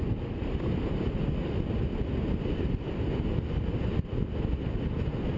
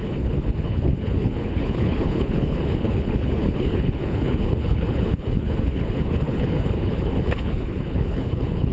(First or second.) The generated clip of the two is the second